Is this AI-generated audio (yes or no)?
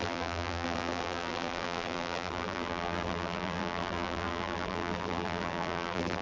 yes